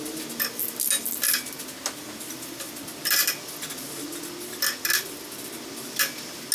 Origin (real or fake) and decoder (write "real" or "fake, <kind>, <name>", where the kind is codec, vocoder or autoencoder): real